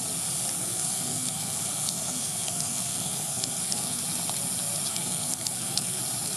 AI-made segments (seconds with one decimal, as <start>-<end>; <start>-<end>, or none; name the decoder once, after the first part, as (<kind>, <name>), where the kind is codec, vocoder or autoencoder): 0.6-4.0 (codec, SNAC); 4.9-6.0